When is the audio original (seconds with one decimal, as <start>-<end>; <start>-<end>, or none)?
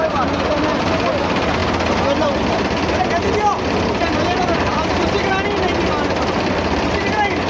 0.0-7.5